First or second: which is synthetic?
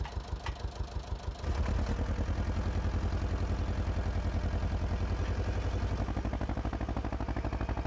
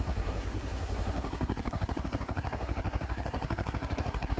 second